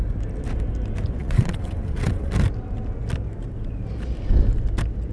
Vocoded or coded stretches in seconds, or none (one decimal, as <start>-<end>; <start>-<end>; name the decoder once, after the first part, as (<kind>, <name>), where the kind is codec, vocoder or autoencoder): 1.2-2.3 (vocoder, WaveNeXt)